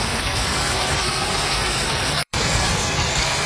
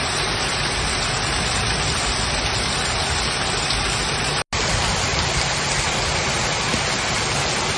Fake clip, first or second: first